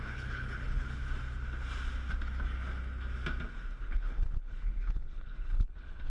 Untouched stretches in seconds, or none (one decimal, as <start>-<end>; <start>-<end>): 1.0-3.8

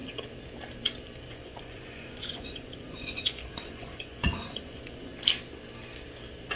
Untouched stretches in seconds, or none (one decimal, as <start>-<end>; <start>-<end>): 0.0-1.3; 5.1-6.6